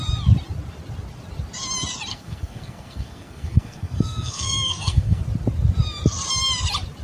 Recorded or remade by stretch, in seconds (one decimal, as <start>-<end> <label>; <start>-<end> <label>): 0.0-2.1 recorded; 2.1-5.2 remade; 5.2-7.0 recorded

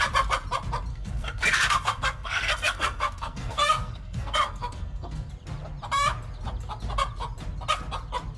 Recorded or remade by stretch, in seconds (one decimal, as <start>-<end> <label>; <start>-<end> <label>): 0.0-0.9 recorded; 0.9-5.3 remade; 5.3-8.4 recorded

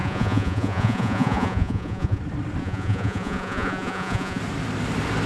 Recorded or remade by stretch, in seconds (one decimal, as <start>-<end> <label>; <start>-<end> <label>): 0.0-2.2 remade; 2.2-2.6 recorded; 2.6-4.4 remade; 4.4-5.3 recorded

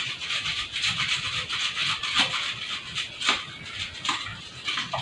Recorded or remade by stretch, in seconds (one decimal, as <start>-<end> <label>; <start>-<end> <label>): 0.0-5.0 recorded

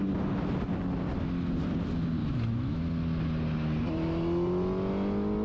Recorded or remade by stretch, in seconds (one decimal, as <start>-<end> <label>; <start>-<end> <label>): 0.0-2.2 recorded; 2.2-2.8 remade; 2.8-5.4 recorded

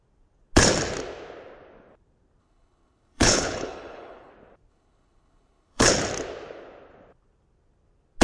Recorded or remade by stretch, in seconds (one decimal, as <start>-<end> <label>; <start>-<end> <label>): 0.0-2.4 recorded; 2.4-4.3 remade; 4.3-4.7 recorded; 4.7-5.9 remade; 5.9-8.2 recorded